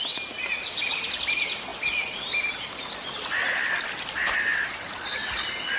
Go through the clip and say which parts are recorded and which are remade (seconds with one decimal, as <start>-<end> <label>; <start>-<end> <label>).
0.0-5.8 recorded